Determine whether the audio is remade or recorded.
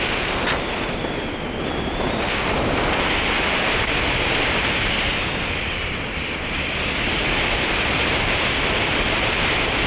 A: recorded